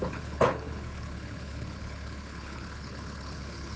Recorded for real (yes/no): no